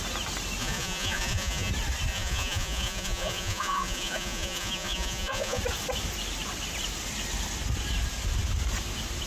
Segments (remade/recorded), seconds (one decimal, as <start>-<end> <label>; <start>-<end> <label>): 0.0-0.6 recorded; 0.6-1.7 remade; 1.7-2.1 recorded; 2.1-5.6 remade; 5.6-9.3 recorded